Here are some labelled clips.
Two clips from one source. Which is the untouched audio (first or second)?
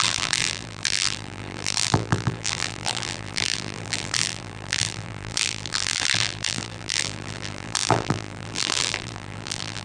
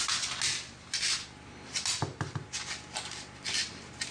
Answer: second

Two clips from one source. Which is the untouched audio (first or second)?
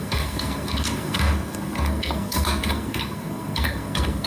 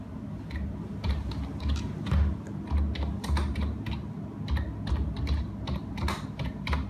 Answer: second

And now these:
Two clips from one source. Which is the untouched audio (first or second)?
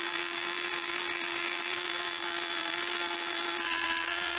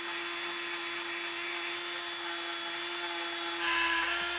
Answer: second